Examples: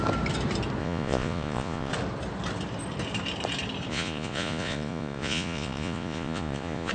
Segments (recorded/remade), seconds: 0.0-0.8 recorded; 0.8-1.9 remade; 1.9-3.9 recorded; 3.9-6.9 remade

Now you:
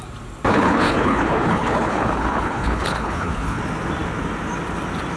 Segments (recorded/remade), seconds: 0.0-0.5 recorded; 0.5-3.6 remade; 3.6-5.2 recorded

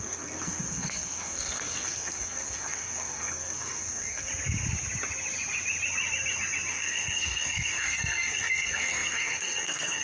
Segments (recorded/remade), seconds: 0.0-4.3 remade; 4.3-6.7 recorded; 6.7-10.0 remade

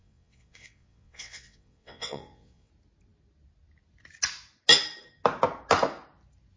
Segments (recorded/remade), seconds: 0.0-2.7 remade; 2.7-6.6 recorded

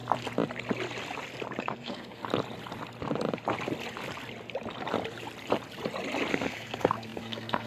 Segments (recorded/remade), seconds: 0.0-1.6 recorded; 1.6-2.2 remade; 2.2-6.3 recorded; 6.3-7.7 remade